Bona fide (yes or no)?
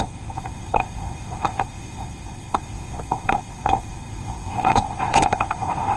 no